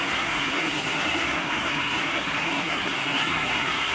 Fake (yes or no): yes